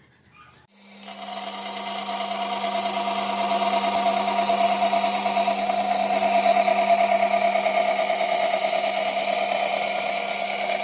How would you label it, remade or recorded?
recorded